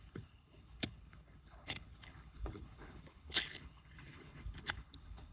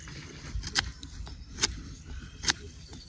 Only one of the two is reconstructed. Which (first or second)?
first